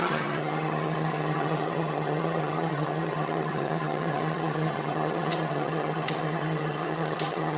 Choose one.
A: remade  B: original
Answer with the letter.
A